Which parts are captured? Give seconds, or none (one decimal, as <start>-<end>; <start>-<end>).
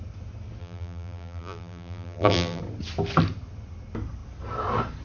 0.0-0.6; 2.6-5.0